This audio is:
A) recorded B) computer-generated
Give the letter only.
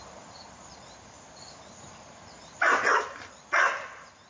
A